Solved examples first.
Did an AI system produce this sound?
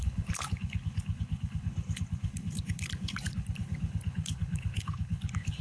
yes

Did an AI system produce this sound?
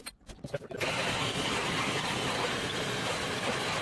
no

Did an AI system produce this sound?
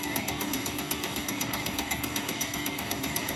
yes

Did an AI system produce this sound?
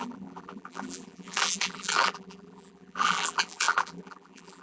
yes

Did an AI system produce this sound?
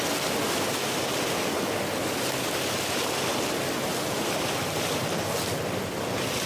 no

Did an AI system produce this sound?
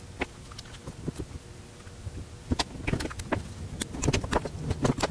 no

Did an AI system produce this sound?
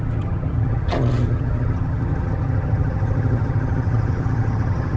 yes